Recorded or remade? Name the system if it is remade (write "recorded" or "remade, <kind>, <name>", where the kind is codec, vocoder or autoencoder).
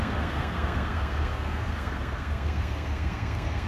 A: remade, codec, SNAC